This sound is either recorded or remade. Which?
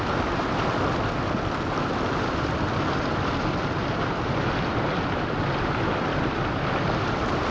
recorded